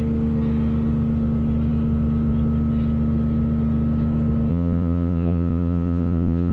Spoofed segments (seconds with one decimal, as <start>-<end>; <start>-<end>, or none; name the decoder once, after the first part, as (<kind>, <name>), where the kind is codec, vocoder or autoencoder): 4.5-6.5 (vocoder, Vocos)